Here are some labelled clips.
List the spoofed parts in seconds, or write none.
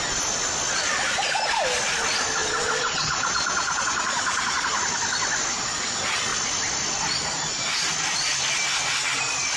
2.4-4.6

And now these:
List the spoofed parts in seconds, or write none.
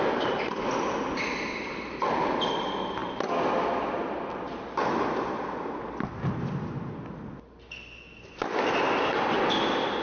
none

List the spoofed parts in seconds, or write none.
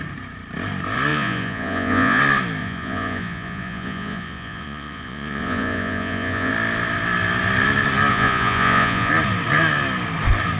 1.1-2.2; 2.6-6.5; 8.1-9.1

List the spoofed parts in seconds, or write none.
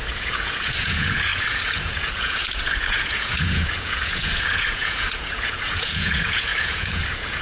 0.0-7.4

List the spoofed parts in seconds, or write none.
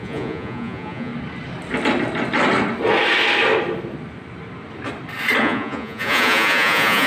0.0-1.1; 5.4-7.1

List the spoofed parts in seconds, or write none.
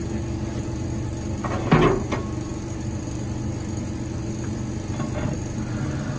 none